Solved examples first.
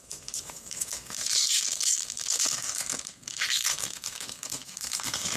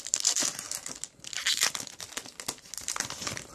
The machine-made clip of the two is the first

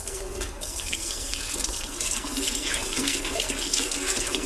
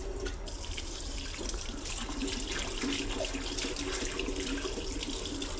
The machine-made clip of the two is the first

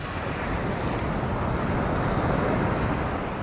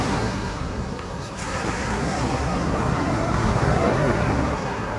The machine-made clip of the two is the second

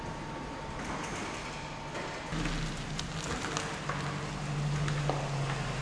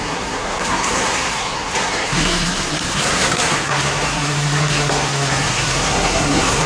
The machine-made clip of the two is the second